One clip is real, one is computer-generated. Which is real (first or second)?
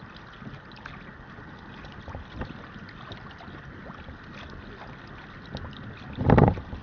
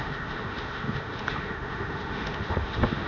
first